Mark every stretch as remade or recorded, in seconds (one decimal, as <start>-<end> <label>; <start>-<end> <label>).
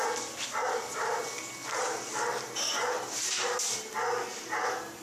0.0-5.0 recorded